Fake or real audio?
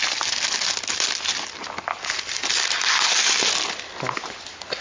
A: real